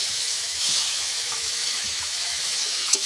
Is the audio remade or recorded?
remade